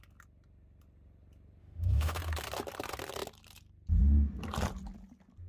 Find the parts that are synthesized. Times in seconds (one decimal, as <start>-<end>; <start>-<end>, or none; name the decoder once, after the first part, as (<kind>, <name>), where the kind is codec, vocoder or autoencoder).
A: 1.6-2.2 (autoencoder, DAC-VAE)